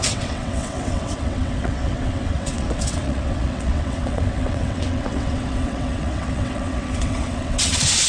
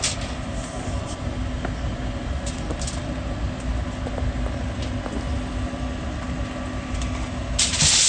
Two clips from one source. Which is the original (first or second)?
second